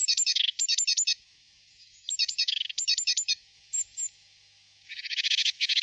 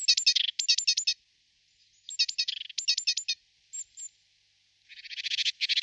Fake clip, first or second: first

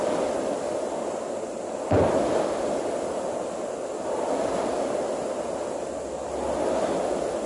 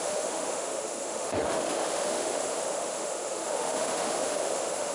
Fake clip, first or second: second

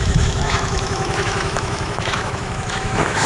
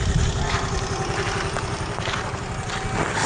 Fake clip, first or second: first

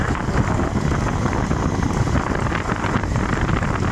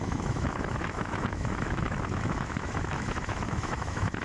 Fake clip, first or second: second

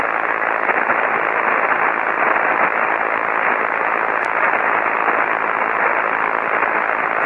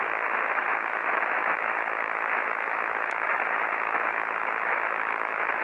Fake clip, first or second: second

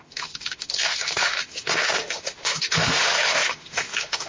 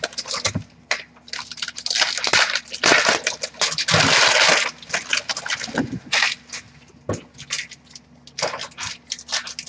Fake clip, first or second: first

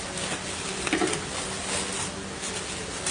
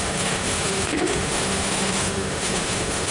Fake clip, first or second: second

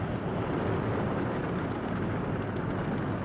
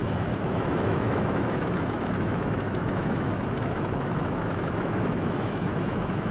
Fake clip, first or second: second